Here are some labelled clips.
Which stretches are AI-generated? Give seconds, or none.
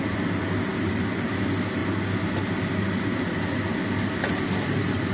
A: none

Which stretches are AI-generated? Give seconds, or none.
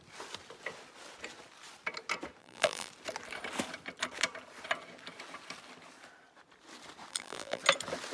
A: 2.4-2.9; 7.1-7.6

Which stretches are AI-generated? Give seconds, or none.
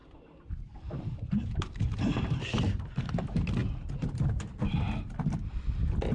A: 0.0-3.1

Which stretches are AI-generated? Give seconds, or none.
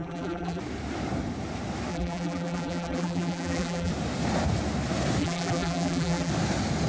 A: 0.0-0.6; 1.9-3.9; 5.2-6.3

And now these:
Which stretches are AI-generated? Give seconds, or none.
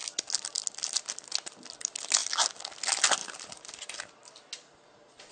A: 3.2-4.0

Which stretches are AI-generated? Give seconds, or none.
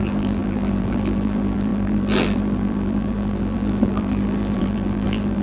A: 0.0-5.4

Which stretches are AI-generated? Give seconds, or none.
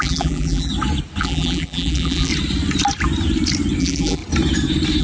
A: 0.0-0.7; 1.2-2.3; 3.8-4.2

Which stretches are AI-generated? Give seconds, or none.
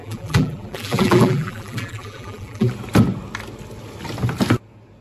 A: 0.0-2.7